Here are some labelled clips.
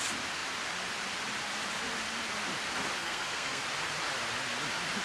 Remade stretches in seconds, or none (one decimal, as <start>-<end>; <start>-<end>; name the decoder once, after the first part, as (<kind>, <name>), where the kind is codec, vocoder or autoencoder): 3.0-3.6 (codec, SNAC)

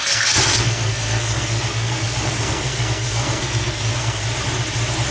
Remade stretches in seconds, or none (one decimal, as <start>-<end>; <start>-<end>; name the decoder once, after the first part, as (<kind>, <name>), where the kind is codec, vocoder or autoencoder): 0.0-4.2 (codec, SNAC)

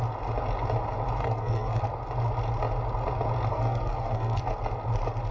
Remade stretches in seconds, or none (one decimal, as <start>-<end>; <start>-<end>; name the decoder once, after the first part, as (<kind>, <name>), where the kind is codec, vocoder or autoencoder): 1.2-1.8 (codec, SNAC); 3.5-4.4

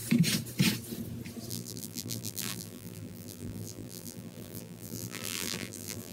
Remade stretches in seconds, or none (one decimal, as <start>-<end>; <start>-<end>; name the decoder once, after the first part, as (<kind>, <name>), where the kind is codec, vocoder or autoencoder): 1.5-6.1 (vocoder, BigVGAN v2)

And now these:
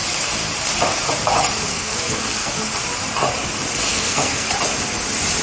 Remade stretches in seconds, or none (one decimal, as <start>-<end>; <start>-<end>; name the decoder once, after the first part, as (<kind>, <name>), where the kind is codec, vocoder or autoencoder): 1.7-2.6 (codec, SNAC); 3.9-4.5

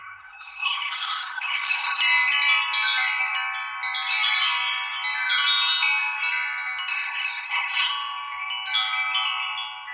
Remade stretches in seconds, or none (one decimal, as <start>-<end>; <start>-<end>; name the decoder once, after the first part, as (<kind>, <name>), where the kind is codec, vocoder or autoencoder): 0.0-2.0 (codec, SNAC); 6.9-7.9

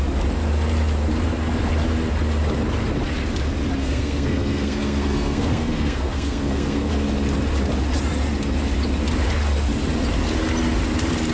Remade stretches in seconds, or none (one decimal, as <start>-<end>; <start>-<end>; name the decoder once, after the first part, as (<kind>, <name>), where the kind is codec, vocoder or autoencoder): 3.8-6.9 (codec, SNAC)

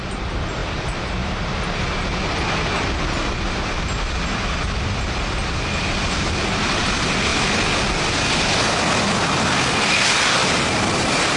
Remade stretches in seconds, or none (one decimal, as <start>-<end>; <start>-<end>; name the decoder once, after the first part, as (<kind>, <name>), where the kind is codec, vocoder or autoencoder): none